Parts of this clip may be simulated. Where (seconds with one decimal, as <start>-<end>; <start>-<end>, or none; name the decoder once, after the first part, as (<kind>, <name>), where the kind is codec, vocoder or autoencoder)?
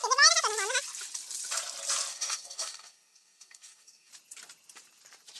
2.1-4.1 (codec, DAC)